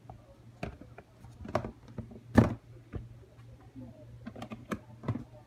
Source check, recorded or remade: recorded